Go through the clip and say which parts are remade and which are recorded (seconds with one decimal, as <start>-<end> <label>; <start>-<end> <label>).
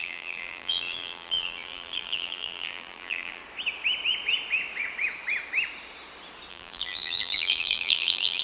0.0-3.4 remade; 3.4-6.5 recorded; 6.5-8.4 remade